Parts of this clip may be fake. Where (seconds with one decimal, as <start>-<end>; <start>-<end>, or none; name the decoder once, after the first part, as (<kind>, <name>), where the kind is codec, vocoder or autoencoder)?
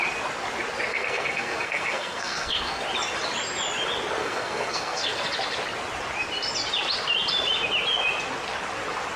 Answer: 0.9-2.8 (codec, SNAC); 4.2-5.2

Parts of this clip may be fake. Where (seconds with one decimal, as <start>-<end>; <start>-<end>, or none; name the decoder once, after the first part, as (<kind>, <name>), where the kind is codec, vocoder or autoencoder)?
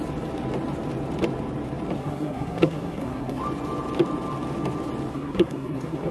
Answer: 2.0-3.4 (codec, SNAC); 5.1-6.1